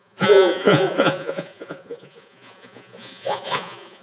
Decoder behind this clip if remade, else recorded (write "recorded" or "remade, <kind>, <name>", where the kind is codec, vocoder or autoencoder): remade, vocoder, Vocos